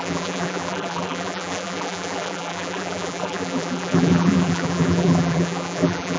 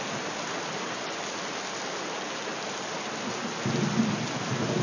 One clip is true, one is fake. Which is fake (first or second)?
first